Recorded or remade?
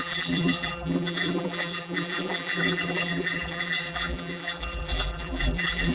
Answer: remade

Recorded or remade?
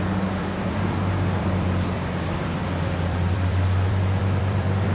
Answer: remade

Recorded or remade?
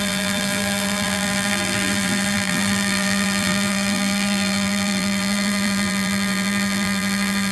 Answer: remade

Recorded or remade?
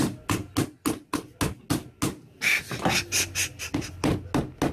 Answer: recorded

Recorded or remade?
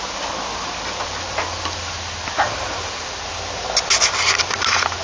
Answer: recorded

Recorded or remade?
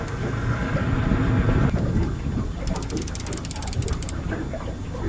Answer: recorded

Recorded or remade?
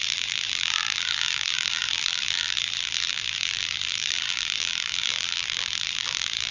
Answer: remade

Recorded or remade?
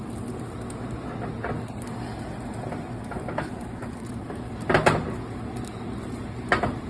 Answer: recorded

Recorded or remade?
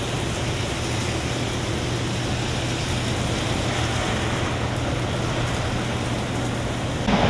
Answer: recorded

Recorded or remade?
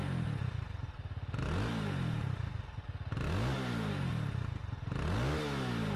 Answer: recorded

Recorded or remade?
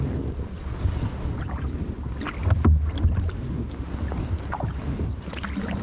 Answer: recorded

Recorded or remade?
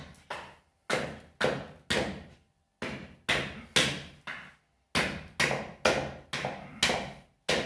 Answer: recorded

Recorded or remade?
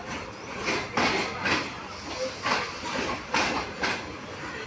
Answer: recorded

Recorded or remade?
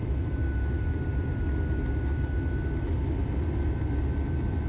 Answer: recorded